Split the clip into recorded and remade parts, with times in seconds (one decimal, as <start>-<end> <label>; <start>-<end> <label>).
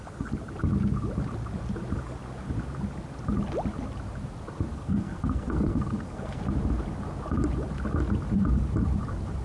0.0-4.7 recorded; 4.7-6.4 remade; 6.4-9.4 recorded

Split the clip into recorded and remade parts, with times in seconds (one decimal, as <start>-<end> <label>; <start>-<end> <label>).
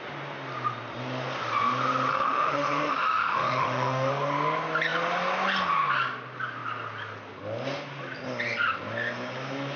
0.0-2.1 recorded; 2.1-4.1 remade; 4.1-9.8 recorded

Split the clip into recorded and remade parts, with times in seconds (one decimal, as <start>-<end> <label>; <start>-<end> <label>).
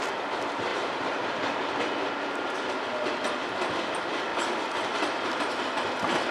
0.0-0.7 recorded; 0.7-1.4 remade; 1.4-4.3 recorded; 4.3-5.5 remade; 5.5-6.3 recorded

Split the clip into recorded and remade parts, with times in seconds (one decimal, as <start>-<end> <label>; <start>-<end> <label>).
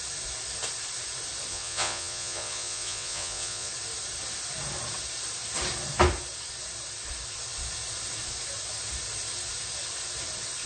0.0-1.5 recorded; 1.5-3.7 remade; 3.7-10.7 recorded